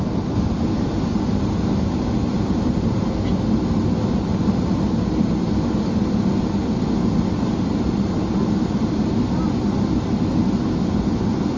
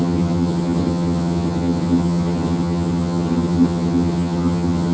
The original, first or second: first